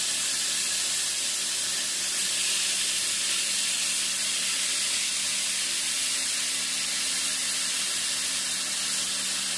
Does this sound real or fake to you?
real